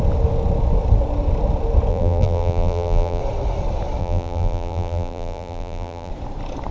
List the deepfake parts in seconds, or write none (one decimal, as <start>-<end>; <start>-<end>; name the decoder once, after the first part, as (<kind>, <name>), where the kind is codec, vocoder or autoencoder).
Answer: 1.9-3.2 (vocoder, BigVGAN v2); 4.0-6.1